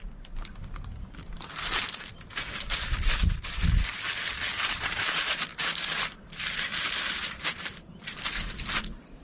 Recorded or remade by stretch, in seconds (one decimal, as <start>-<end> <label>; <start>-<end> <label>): 0.0-3.6 remade; 3.6-4.7 recorded; 4.7-9.2 remade